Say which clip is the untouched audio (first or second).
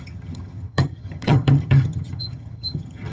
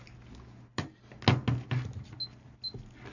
second